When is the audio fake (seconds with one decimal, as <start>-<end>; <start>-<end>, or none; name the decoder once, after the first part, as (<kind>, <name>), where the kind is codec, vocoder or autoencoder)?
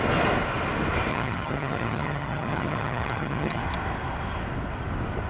1.1-3.6 (vocoder, HiFi-GAN)